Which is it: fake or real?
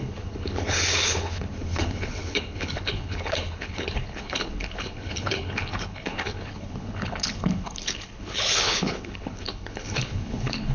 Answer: fake